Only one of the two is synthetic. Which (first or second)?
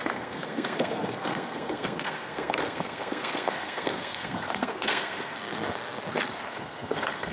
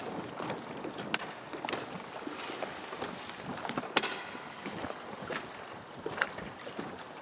first